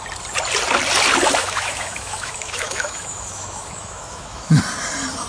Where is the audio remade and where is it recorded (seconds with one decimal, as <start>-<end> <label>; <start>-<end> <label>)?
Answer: 0.0-1.4 recorded; 1.4-4.6 remade; 4.6-5.3 recorded